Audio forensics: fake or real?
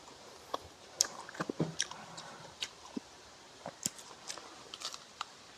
fake